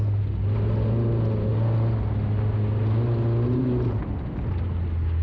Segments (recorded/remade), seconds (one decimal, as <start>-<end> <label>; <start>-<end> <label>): 0.0-5.2 recorded